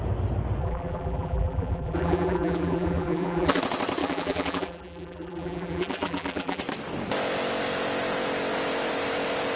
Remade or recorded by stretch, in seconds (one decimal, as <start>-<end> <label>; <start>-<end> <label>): 0.0-0.6 recorded; 0.6-3.6 remade; 3.6-4.0 recorded; 4.0-6.6 remade; 6.6-9.6 recorded